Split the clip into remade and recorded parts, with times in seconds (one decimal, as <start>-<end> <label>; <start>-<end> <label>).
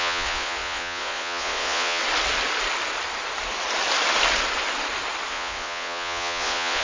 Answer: 0.0-2.0 remade; 2.0-5.3 recorded; 5.3-6.8 remade